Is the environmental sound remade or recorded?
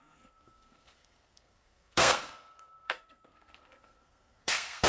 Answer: remade